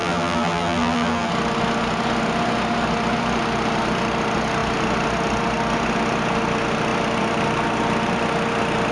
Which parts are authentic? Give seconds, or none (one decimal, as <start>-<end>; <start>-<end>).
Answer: 1.3-8.9